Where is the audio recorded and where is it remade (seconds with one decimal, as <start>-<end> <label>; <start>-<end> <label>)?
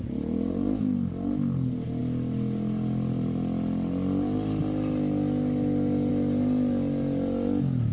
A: 0.0-7.9 recorded